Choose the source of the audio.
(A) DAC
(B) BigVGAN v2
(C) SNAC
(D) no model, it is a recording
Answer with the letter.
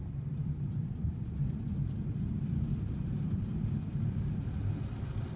D